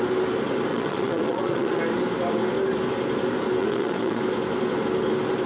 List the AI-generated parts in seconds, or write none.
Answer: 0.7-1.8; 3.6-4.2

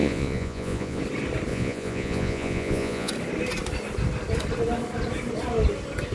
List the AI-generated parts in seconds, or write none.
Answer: 0.0-1.0; 1.5-3.1

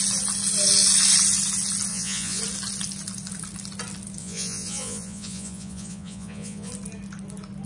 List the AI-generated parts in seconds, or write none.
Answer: 1.9-2.4; 4.2-6.7